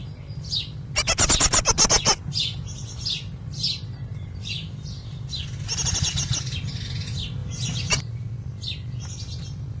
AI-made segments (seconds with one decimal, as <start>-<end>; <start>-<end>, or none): 4.1-5.6; 7.4-8.3